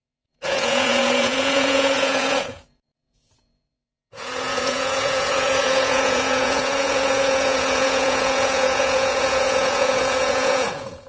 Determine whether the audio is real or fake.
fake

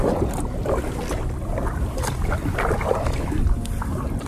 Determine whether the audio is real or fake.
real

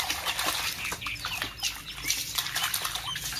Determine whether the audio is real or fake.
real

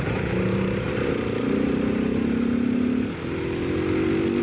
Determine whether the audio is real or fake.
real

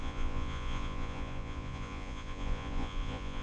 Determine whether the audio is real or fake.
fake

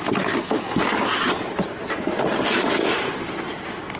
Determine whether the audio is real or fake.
real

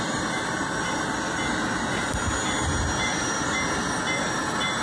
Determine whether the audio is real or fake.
real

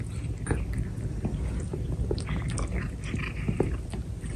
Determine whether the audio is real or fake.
real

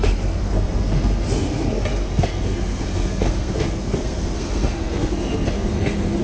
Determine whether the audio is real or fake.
fake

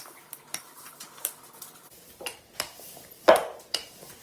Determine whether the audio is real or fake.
fake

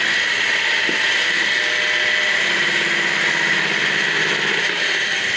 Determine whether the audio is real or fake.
real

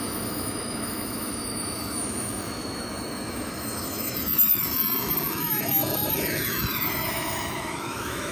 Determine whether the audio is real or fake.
fake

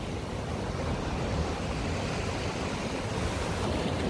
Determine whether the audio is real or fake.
real